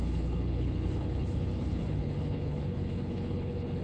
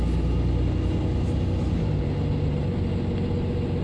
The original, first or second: second